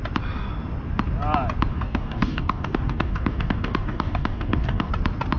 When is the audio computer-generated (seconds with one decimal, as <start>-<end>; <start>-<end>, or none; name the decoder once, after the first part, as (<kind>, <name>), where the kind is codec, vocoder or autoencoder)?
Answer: 1.7-4.9 (codec, DAC)